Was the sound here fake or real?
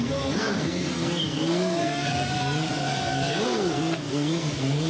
fake